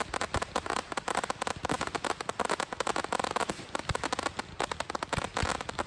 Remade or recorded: recorded